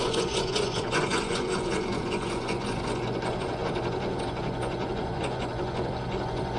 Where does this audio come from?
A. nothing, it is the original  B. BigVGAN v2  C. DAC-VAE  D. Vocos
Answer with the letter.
D